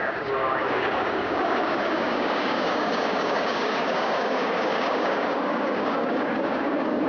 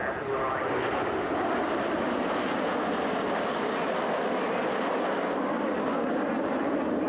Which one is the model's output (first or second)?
first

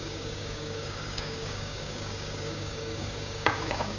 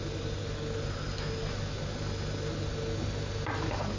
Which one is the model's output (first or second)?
first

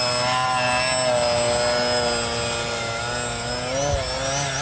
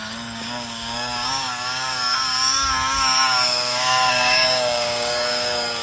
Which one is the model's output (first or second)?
second